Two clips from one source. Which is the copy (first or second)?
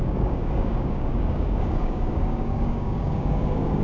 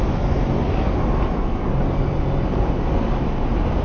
first